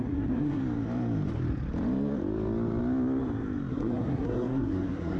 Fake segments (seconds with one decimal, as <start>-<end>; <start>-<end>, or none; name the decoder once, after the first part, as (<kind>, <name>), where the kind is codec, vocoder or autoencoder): 0.0-0.6 (codec, SNAC); 3.7-5.2